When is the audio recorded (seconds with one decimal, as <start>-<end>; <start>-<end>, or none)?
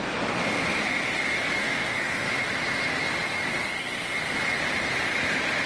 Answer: 0.0-1.6; 2.3-5.7